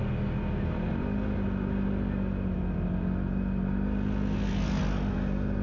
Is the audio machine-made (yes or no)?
no